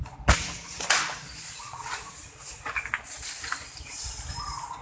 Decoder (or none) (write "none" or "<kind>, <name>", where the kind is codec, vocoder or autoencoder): none